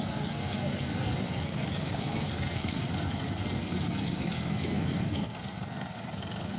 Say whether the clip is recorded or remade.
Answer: remade